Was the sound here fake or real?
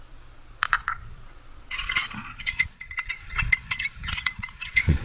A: fake